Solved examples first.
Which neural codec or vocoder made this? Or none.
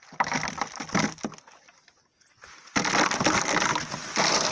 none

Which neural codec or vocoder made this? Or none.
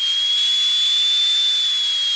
none